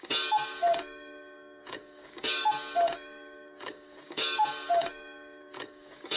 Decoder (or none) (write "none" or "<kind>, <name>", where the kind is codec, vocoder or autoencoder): codec, DAC